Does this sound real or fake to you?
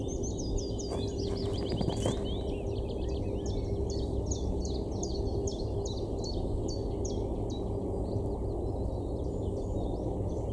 real